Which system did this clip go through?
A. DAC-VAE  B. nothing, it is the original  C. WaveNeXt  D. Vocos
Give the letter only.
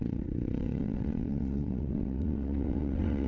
C